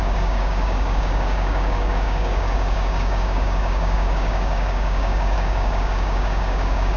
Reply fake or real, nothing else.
fake